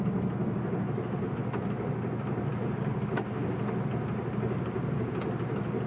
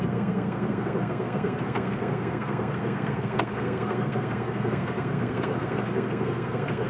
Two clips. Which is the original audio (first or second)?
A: first